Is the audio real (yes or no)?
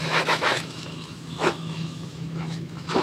no